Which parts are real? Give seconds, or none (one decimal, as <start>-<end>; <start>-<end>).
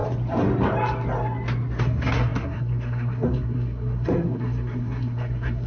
0.0-1.8